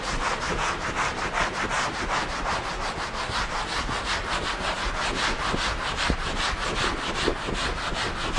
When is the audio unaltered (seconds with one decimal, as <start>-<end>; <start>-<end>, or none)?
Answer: 0.0-8.4